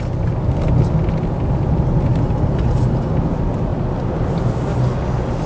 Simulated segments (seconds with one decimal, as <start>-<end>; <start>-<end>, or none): 2.1-3.1

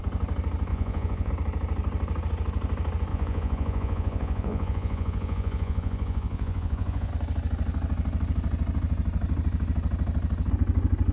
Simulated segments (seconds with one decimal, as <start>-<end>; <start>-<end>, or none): 0.7-1.3; 3.1-7.1

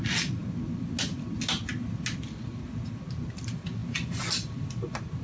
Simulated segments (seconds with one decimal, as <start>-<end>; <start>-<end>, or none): none

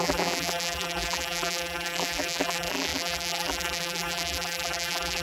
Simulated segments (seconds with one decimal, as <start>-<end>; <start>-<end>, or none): 0.0-5.2

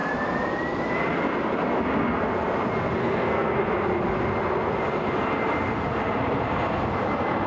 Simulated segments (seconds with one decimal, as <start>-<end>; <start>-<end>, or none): 3.0-3.6

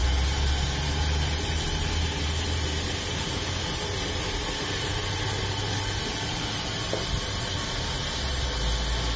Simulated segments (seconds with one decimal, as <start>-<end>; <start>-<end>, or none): none

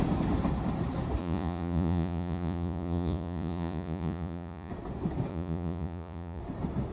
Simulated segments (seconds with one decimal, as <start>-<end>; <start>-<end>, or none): 1.2-4.7; 5.3-6.4

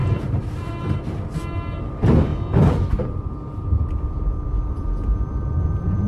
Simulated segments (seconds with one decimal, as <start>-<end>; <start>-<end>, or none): 0.0-0.7; 2.3-6.1